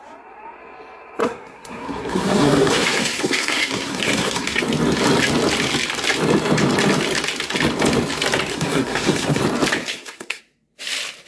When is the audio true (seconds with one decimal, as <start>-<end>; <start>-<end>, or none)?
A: 0.0-1.2; 4.6-8.5; 9.4-9.8; 10.4-11.3